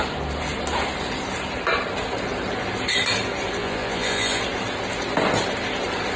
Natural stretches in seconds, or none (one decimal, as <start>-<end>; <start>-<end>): 0.0-3.6; 4.4-6.2